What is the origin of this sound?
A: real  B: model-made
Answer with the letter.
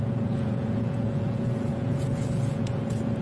B